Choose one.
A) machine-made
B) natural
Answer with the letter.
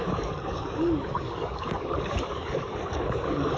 A